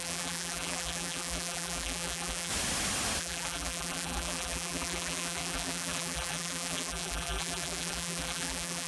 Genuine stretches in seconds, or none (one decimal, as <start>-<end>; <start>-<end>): 2.5-3.2